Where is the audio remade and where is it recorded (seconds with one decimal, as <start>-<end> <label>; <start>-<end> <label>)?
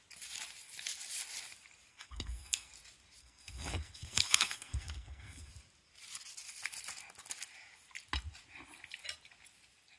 0.0-1.9 recorded; 1.9-2.7 remade; 2.7-3.2 recorded; 3.2-5.5 remade; 5.5-10.0 recorded